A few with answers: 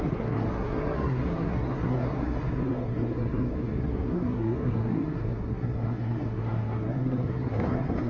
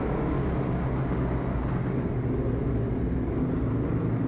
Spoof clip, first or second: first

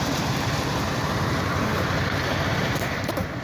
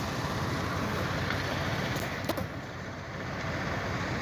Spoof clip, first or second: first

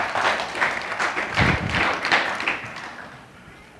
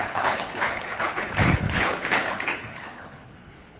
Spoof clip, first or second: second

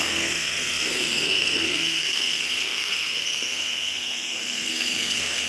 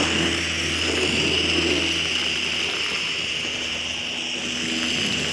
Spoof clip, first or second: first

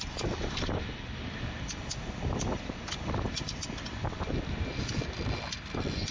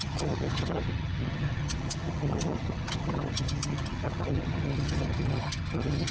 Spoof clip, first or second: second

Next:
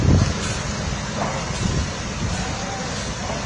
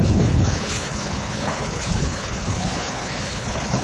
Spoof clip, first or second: second